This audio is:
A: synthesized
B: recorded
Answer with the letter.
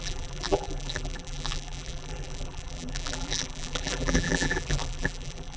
A